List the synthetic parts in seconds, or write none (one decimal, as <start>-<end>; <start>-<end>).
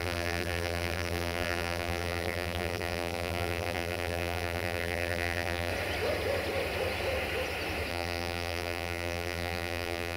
0.0-5.7; 7.9-10.2